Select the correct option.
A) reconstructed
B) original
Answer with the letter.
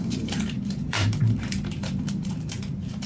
A